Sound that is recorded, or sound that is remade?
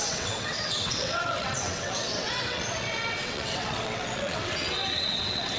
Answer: remade